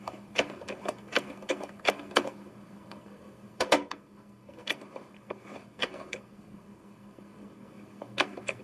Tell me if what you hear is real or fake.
fake